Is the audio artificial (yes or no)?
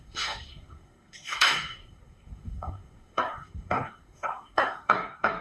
yes